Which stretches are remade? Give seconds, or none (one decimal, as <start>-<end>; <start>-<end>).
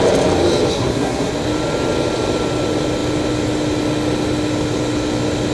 0.7-1.3